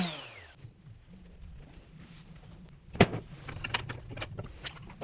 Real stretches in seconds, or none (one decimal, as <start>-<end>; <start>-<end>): 0.0-1.4; 4.4-5.0